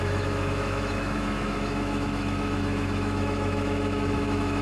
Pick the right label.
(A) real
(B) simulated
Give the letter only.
B